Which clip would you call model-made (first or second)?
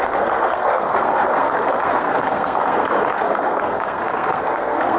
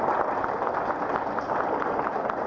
first